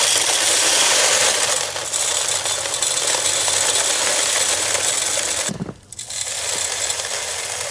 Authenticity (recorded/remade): recorded